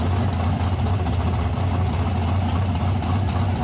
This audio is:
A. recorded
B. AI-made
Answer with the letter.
A